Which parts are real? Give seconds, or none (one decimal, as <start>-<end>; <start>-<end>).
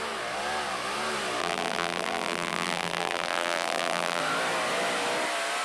0.0-1.4; 4.2-5.6